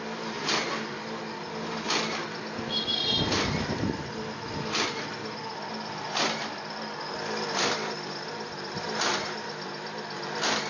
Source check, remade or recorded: recorded